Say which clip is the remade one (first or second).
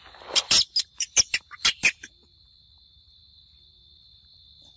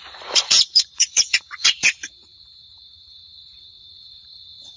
second